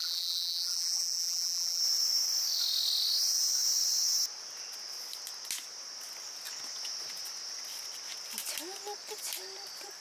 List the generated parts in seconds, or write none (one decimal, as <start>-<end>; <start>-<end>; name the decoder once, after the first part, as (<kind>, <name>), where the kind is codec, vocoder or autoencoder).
0.0-1.8 (vocoder, BigVGAN v2)